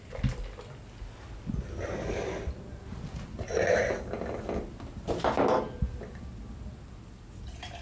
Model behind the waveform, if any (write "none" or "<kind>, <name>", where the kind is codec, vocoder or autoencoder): none